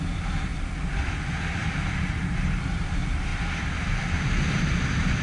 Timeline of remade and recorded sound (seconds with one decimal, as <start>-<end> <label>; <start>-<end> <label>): 0.0-1.6 recorded; 1.6-2.2 remade; 2.2-5.2 recorded